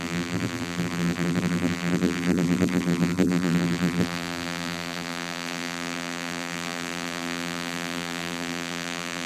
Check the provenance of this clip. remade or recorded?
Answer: remade